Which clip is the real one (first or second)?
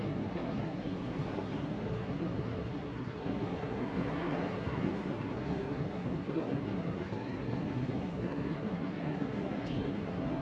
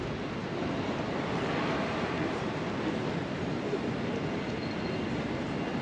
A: second